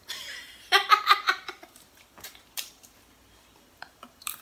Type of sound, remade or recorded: remade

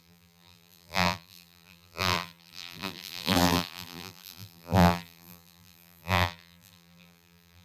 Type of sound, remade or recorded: remade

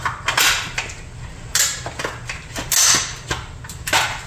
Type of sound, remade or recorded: recorded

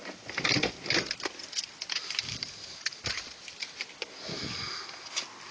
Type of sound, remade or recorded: recorded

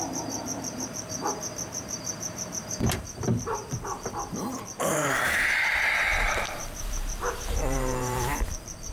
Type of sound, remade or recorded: remade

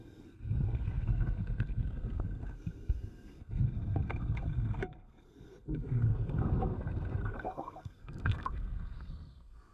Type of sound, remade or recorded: remade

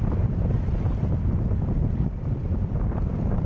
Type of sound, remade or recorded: recorded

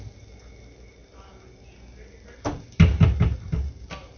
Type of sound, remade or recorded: recorded